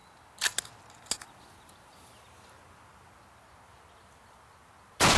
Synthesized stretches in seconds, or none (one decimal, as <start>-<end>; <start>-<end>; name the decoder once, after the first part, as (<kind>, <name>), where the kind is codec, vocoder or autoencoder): none